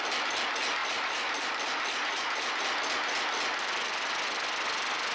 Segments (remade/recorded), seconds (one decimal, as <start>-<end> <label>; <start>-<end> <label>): 0.0-0.8 recorded; 0.8-2.6 remade; 2.6-5.1 recorded